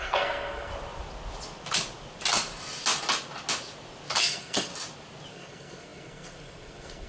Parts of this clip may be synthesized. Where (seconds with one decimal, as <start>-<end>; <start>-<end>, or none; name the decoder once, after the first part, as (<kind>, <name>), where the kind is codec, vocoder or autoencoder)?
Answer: 0.0-0.7 (codec, SNAC); 4.2-4.7; 5.3-7.1